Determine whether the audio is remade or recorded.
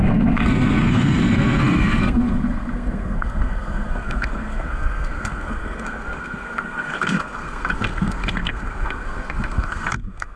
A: remade